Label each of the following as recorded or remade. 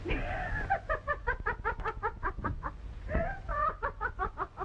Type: remade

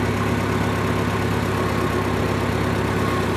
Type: recorded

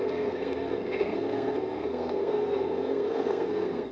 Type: remade